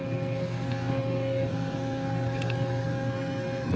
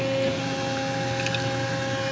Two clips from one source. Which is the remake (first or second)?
first